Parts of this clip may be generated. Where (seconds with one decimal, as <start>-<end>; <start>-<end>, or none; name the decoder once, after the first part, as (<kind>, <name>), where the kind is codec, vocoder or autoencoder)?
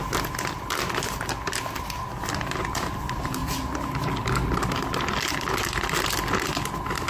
none